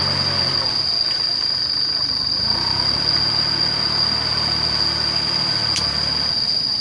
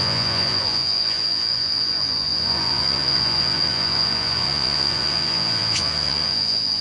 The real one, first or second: first